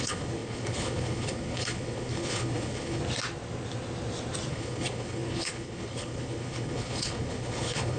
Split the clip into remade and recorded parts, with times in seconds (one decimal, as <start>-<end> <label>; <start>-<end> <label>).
0.0-3.0 remade; 3.0-4.5 recorded; 4.5-8.0 remade